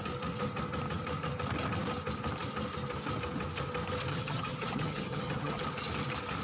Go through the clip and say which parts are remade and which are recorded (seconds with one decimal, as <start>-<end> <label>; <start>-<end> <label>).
0.0-4.1 recorded; 4.1-5.6 remade; 5.6-6.4 recorded